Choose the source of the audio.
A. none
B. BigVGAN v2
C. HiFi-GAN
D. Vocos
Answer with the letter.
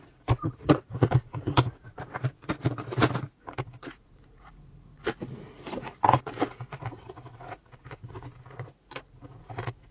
D